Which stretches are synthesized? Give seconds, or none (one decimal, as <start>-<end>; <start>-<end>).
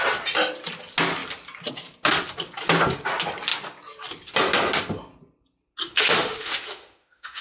5.8-7.4